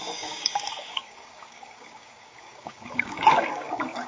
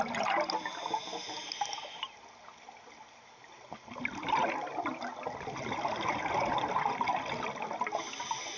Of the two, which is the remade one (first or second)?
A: first